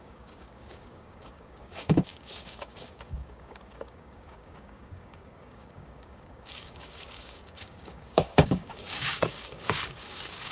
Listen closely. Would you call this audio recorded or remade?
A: remade